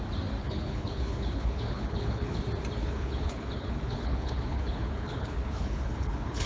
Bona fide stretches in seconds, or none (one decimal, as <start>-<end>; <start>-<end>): 0.0-0.4; 2.4-2.8